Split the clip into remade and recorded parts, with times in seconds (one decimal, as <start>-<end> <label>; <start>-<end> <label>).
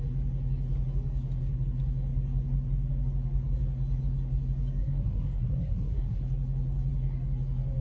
0.0-4.8 recorded; 4.8-6.2 remade; 6.2-7.8 recorded